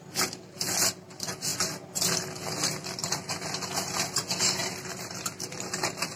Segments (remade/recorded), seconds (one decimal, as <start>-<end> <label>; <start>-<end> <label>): 0.0-4.6 recorded; 4.6-5.7 remade; 5.7-6.2 recorded